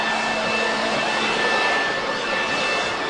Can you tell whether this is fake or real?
real